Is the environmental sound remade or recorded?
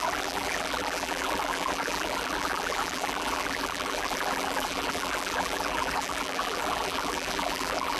remade